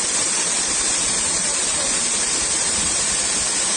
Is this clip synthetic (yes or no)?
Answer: yes